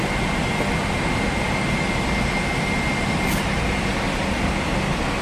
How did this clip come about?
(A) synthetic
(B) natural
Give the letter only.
B